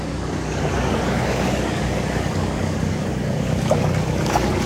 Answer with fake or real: fake